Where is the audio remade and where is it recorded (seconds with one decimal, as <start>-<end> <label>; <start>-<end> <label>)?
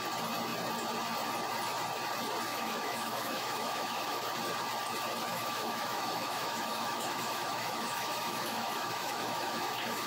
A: 0.0-2.5 recorded; 2.5-4.2 remade; 4.2-5.3 recorded; 5.3-10.1 remade